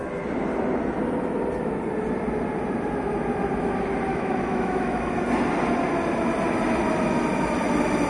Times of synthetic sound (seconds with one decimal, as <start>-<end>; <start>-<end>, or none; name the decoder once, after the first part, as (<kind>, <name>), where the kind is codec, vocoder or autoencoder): 4.1-5.1 (autoencoder, DAC-VAE)